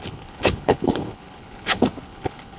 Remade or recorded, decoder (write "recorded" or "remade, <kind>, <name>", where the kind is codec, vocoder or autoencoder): remade, codec, HILCodec